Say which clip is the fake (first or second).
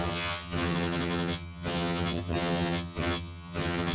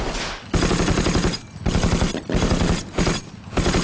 first